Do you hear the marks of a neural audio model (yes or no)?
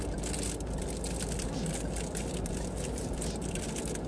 no